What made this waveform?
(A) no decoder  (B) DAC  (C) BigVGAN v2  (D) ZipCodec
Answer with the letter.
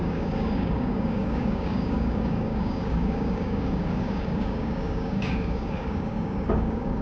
B